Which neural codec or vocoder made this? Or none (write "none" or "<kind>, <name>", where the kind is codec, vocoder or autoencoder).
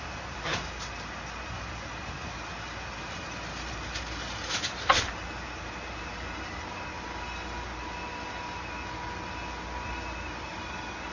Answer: none